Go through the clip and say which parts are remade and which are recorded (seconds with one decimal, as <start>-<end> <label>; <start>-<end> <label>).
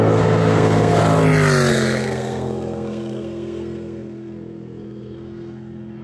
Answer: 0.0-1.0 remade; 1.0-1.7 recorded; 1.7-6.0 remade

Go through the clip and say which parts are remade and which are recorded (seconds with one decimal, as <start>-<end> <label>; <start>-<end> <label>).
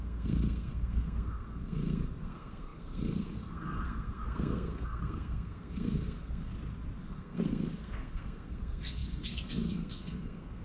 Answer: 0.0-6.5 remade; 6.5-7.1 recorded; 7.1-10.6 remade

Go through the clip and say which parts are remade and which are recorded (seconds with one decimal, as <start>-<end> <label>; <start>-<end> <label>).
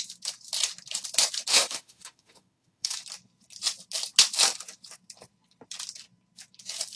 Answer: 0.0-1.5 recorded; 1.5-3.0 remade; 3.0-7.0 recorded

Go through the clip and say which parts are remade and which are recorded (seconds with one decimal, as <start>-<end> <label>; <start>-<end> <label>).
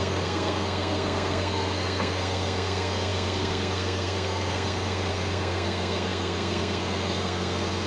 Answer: 0.0-7.9 remade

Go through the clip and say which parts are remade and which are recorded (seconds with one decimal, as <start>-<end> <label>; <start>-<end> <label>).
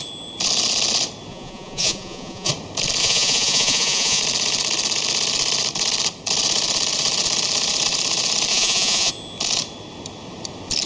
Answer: 0.0-1.3 recorded; 1.3-2.5 remade; 2.5-3.0 recorded; 3.0-4.2 remade; 4.2-8.5 recorded; 8.5-9.1 remade; 9.1-10.9 recorded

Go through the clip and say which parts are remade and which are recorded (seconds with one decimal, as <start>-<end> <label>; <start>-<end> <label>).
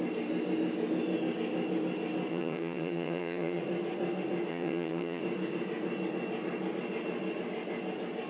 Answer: 0.0-2.3 recorded; 2.3-3.6 remade; 3.6-4.5 recorded; 4.5-5.2 remade; 5.2-8.3 recorded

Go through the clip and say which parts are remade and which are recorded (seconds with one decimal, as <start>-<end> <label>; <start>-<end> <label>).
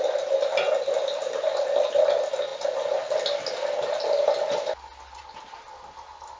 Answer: 0.0-6.4 recorded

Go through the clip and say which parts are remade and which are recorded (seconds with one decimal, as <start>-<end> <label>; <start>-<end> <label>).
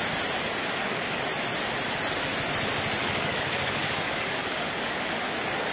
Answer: 0.0-0.6 recorded; 0.6-1.2 remade; 1.2-3.0 recorded; 3.0-5.2 remade; 5.2-5.7 recorded